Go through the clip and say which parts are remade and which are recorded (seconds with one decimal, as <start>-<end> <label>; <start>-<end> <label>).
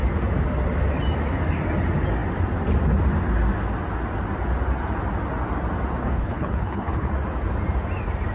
0.0-6.0 recorded; 6.0-7.1 remade; 7.1-8.3 recorded